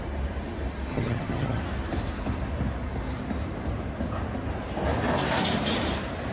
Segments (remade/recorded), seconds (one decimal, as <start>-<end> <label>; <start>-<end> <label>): 0.0-0.9 recorded; 0.9-1.6 remade; 1.6-6.3 recorded